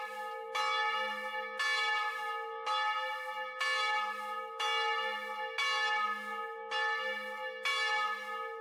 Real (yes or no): yes